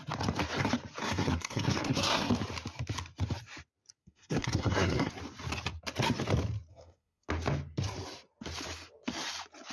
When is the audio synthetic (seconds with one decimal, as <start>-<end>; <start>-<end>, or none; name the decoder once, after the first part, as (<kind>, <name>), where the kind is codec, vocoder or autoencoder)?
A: 1.0-2.3 (codec, SNAC); 4.0-5.1; 6.7-7.3